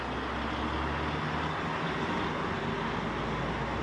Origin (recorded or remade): recorded